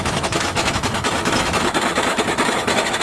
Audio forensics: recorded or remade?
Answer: remade